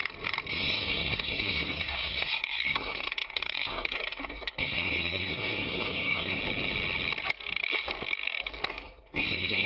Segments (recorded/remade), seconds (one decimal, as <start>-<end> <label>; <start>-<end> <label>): 0.0-0.5 recorded; 0.5-6.4 remade; 6.4-8.7 recorded; 8.7-9.7 remade